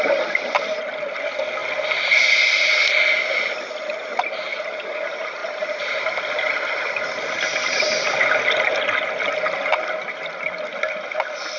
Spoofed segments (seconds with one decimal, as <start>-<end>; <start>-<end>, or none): none